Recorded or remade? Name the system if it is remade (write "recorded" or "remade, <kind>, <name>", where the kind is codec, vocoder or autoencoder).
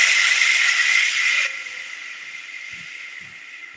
recorded